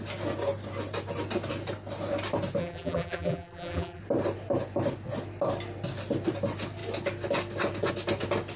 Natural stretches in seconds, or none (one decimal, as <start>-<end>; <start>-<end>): 0.0-2.6; 4.0-8.6

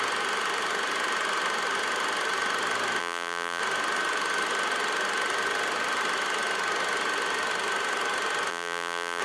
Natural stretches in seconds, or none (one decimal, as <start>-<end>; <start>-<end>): 0.0-3.0; 3.6-8.5

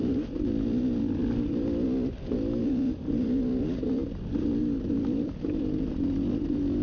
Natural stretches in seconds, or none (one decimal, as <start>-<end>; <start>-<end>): 1.2-2.6; 4.0-4.6

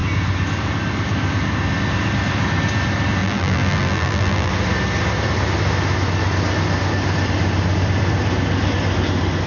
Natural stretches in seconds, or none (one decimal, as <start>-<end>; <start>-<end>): 0.0-3.2; 4.5-9.5

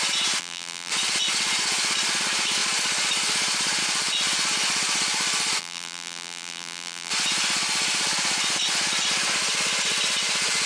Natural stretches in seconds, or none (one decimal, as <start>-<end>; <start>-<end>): 0.0-0.4; 0.9-5.6; 7.1-10.7

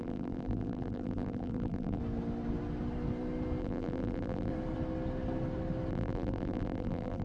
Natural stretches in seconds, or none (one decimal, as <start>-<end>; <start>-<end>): 2.0-3.6; 4.5-5.9

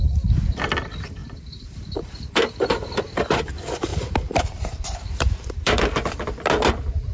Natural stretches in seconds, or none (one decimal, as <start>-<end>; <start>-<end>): 0.0-1.2; 3.0-3.9; 5.8-7.1